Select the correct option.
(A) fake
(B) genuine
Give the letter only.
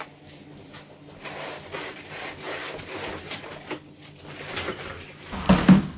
B